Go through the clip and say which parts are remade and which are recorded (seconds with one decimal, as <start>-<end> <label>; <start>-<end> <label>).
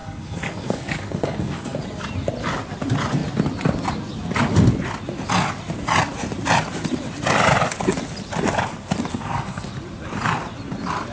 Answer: 0.0-1.8 remade; 1.8-9.1 recorded; 9.1-9.7 remade; 9.7-11.1 recorded